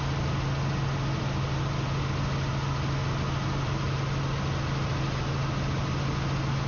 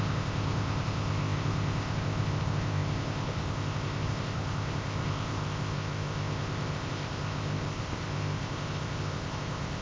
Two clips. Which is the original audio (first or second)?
first